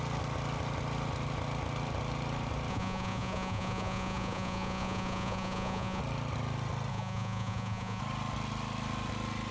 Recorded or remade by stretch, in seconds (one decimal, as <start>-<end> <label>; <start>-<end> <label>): 0.0-2.7 recorded; 2.7-6.0 remade; 6.0-6.9 recorded; 6.9-8.0 remade; 8.0-9.5 recorded